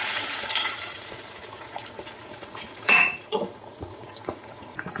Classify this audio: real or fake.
fake